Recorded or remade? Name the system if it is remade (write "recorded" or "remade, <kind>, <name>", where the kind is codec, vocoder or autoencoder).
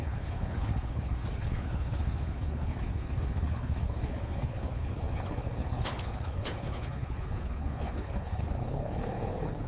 remade, codec, HILCodec